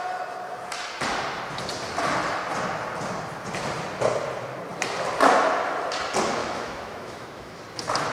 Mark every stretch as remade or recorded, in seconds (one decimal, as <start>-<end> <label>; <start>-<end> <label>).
0.0-6.4 recorded; 6.4-7.6 remade; 7.6-8.1 recorded